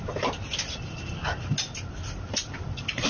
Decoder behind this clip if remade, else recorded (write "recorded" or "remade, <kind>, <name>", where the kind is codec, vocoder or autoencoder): recorded